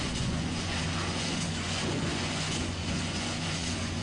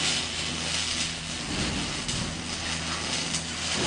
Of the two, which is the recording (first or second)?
second